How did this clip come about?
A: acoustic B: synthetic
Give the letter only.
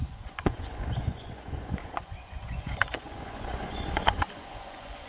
B